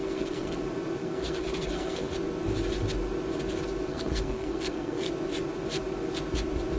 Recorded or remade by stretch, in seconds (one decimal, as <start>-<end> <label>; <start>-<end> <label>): 0.0-0.6 remade; 0.6-1.0 recorded; 1.0-2.1 remade; 2.1-3.9 recorded; 3.9-5.1 remade; 5.1-6.8 recorded